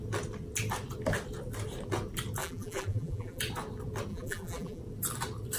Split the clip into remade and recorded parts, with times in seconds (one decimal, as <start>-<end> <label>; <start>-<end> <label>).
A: 0.0-2.4 recorded; 2.4-3.4 remade; 3.4-4.1 recorded; 4.1-4.8 remade; 4.8-5.6 recorded